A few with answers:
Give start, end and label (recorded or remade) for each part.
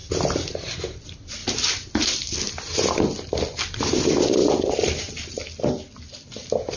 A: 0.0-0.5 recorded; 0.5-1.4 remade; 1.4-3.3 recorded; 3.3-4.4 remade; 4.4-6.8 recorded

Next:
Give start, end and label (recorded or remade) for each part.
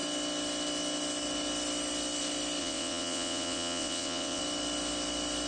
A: 0.0-2.6 recorded; 2.6-4.4 remade; 4.4-5.5 recorded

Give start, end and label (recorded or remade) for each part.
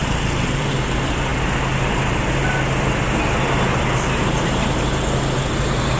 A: 0.0-0.7 remade; 0.7-6.0 recorded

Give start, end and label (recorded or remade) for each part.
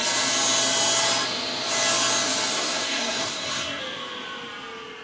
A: 0.0-2.5 recorded; 2.5-3.8 remade; 3.8-5.0 recorded